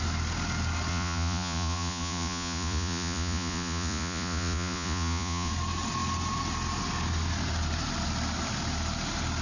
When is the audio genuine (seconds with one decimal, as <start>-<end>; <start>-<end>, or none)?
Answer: 0.0-0.9; 5.5-9.4